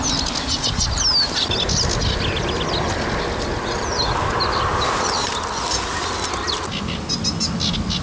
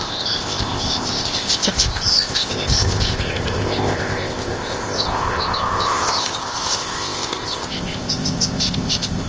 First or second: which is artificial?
second